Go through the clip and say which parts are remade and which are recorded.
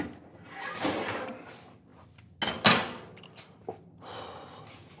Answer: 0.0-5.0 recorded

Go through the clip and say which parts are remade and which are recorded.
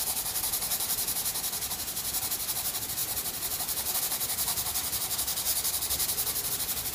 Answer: 0.0-1.3 remade; 1.3-2.5 recorded; 2.5-5.3 remade; 5.3-6.5 recorded; 6.5-6.9 remade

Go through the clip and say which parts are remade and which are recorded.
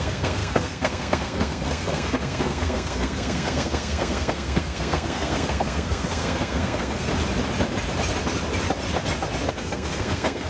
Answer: 0.0-7.1 remade; 7.1-9.5 recorded; 9.5-10.5 remade